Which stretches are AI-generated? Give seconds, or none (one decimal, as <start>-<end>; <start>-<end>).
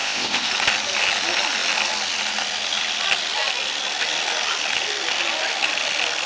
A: 0.0-0.5